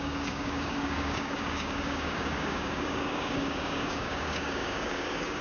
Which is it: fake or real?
fake